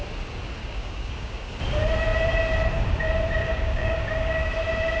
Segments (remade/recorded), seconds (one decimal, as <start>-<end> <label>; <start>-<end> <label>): 0.0-0.6 recorded; 0.6-1.5 remade; 1.5-3.4 recorded; 3.4-4.5 remade; 4.5-5.0 recorded